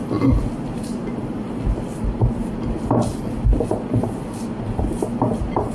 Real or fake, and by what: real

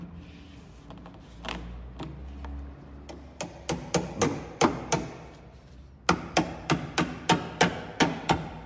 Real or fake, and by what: real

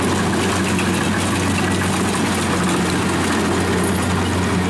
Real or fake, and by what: real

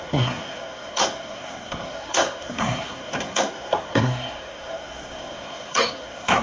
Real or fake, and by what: fake, codec, SNAC